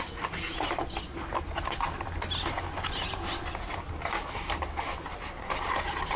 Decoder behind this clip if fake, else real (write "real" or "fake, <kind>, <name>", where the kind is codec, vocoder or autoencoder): real